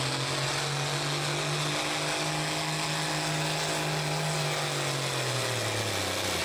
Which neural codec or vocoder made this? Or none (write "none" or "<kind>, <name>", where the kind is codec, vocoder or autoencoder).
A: none